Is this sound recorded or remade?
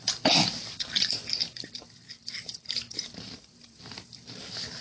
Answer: remade